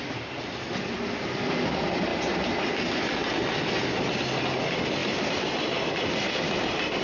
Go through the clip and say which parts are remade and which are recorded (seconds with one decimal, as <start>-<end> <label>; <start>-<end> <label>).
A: 0.0-7.0 recorded